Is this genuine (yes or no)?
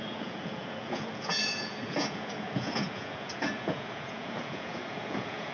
no